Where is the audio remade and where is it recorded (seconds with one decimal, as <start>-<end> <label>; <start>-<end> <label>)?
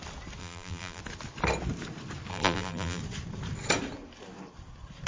0.0-0.4 recorded; 0.4-1.0 remade; 1.0-2.3 recorded; 2.3-3.0 remade; 3.0-5.1 recorded